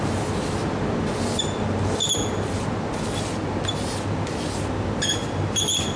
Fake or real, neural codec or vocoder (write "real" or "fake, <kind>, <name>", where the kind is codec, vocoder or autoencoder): real